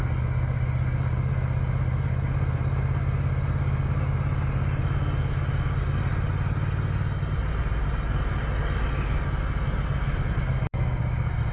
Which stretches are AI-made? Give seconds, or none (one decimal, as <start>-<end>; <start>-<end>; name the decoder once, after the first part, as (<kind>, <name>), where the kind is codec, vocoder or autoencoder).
none